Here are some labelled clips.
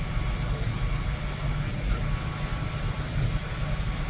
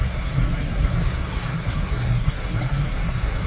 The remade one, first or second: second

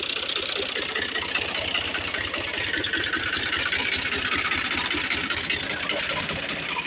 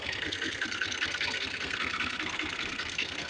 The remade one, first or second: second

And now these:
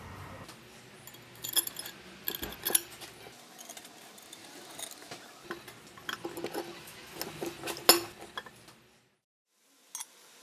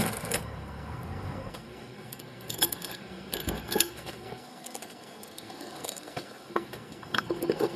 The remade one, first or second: second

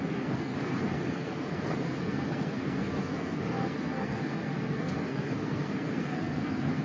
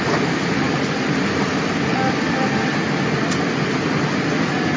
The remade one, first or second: first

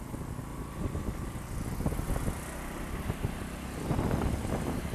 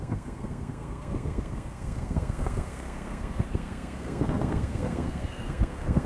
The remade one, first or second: second